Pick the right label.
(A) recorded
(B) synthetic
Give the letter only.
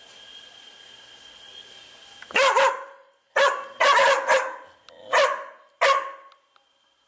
A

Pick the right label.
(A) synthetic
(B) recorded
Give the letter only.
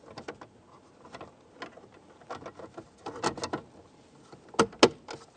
B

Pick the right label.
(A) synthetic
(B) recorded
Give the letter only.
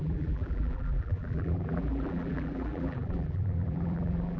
A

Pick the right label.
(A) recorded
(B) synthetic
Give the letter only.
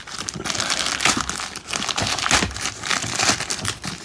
A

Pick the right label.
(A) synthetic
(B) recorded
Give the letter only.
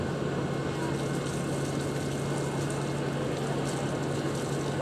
B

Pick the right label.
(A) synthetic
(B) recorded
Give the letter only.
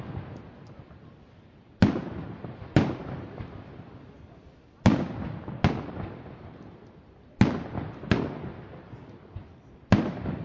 B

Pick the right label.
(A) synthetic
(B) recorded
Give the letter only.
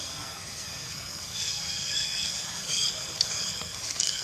A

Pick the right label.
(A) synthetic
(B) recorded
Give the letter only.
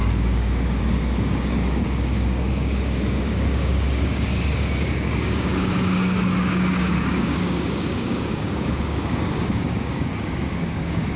A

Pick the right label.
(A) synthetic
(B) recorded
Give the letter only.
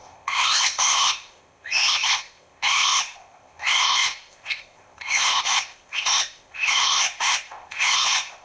A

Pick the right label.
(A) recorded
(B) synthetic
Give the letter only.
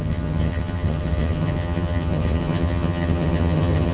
B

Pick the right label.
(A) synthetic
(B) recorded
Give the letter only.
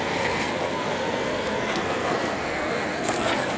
A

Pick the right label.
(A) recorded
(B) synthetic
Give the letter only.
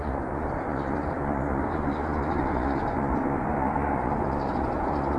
B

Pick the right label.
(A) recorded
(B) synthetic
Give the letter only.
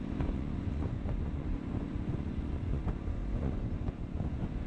B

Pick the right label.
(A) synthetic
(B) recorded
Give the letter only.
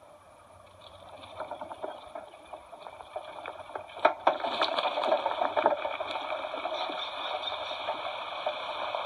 A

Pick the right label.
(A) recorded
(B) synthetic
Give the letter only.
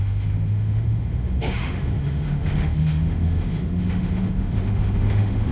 B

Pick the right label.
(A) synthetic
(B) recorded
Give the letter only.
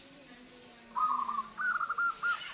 B